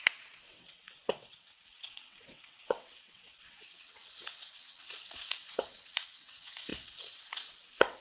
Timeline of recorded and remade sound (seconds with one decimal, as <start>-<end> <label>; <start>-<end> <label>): 0.0-8.0 remade